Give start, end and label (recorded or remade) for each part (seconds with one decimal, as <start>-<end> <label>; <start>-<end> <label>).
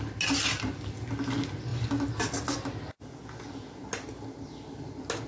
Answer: 0.0-5.3 recorded